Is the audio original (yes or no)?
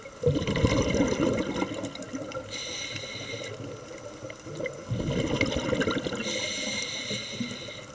yes